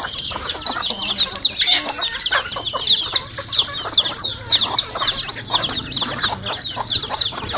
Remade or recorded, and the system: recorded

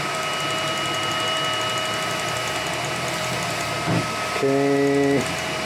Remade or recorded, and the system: recorded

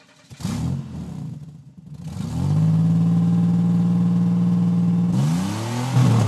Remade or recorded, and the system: recorded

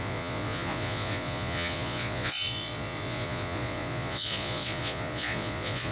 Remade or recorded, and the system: remade, vocoder, Vocos